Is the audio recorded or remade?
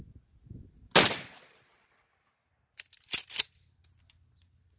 recorded